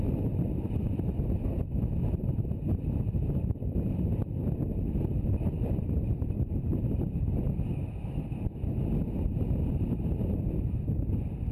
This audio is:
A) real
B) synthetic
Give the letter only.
A